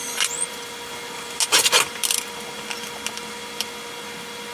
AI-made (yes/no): no